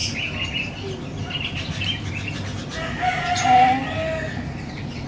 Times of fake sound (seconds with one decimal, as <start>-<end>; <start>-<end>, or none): none